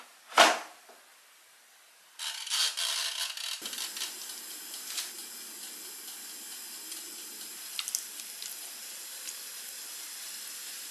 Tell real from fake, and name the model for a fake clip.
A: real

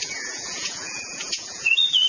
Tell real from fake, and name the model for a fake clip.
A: fake, vocoder, Vocos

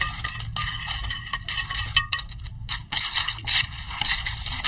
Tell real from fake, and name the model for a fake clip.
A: real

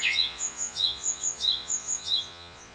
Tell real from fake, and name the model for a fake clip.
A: fake, vocoder, Vocos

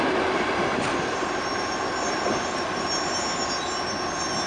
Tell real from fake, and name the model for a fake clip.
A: real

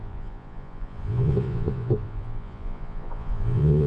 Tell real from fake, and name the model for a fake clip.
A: fake, vocoder, Vocos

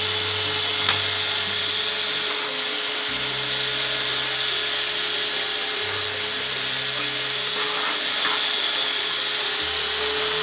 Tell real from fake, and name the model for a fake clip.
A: real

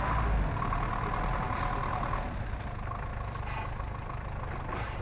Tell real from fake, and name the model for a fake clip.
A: real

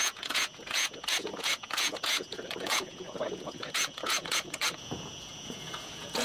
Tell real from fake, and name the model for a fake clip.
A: fake, vocoder, Vocos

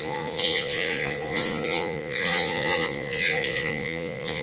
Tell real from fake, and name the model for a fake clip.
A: fake, vocoder, Vocos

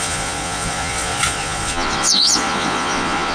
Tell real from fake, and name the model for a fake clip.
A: fake, vocoder, Vocos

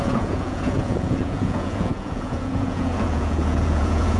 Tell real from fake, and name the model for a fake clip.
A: fake, vocoder, Vocos